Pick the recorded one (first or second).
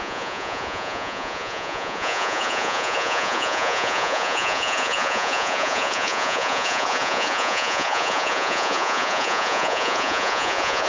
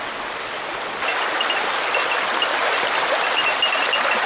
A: second